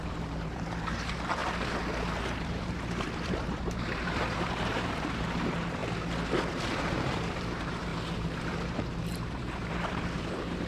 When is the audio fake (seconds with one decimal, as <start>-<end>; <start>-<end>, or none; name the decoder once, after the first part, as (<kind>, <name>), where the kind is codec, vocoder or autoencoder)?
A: 0.0-1.4 (vocoder, BigVGAN v2); 2.0-5.8; 6.5-10.7